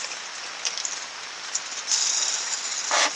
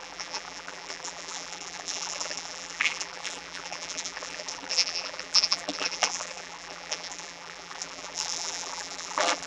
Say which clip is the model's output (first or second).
second